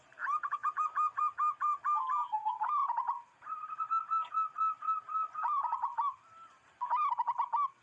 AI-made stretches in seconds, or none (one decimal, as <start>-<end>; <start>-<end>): none